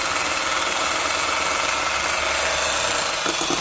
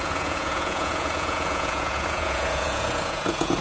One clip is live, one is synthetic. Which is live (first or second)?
first